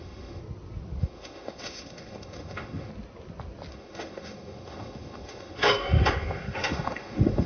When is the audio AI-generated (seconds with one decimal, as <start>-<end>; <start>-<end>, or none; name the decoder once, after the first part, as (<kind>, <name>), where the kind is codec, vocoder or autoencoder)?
0.0-0.4 (autoencoder, DAC-VAE); 1.0-2.9; 3.7-7.5